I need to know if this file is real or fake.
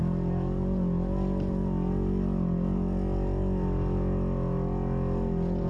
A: real